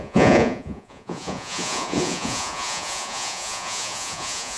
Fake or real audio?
fake